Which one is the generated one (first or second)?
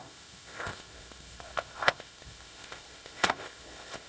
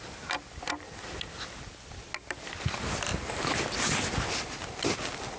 first